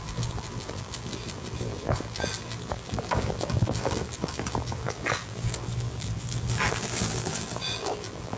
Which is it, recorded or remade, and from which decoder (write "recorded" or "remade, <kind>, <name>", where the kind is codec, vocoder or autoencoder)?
remade, vocoder, BigVGAN v2